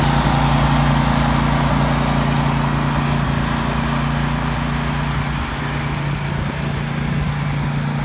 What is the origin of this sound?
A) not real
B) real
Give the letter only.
B